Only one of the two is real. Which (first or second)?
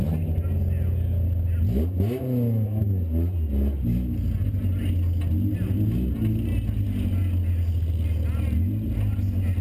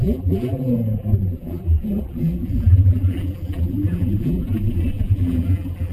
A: first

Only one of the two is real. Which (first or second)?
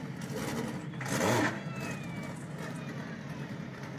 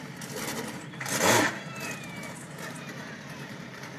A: first